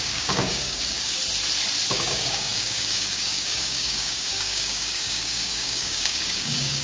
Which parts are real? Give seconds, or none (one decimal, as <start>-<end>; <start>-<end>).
1.2-1.9